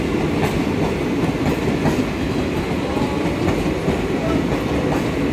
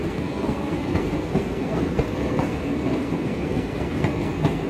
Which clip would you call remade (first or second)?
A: second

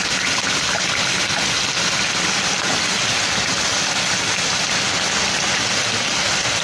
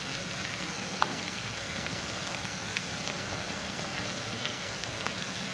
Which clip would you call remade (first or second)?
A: second